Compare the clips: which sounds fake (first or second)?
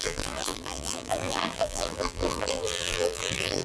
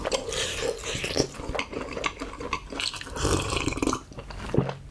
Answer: first